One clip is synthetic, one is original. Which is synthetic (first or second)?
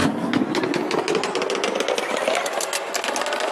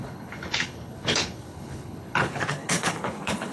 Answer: second